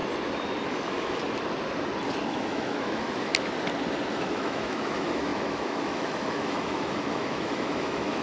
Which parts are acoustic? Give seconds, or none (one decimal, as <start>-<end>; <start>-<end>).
0.0-0.7; 1.2-2.3; 3.3-4.1